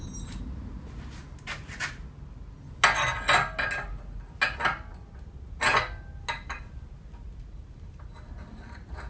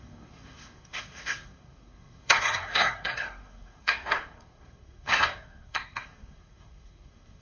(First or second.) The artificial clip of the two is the second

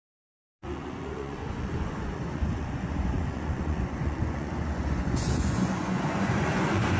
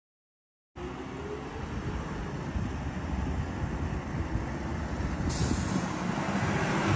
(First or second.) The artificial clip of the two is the first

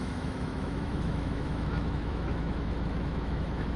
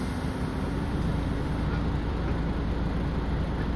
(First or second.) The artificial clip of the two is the first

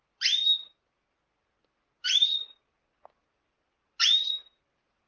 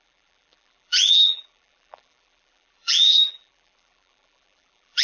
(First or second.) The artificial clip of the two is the second